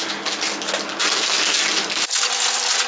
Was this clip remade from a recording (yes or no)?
no